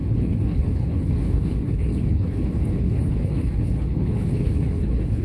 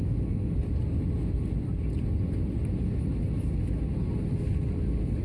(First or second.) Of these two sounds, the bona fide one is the second